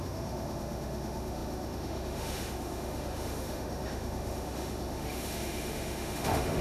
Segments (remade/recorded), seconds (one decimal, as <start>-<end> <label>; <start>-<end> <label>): 0.0-6.6 remade